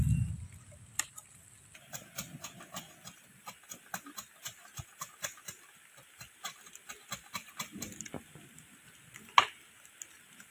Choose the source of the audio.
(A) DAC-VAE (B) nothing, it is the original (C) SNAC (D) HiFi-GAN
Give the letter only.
B